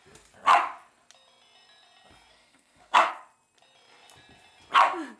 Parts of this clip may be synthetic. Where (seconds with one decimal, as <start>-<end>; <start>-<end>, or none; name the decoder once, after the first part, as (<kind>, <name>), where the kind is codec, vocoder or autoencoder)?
2.3-3.1 (codec, SNAC)